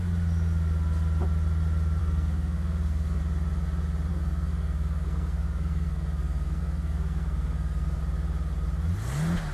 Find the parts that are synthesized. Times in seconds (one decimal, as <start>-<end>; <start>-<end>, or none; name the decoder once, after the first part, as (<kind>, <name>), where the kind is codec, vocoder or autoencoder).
2.0-3.2 (codec, SNAC); 4.1-8.0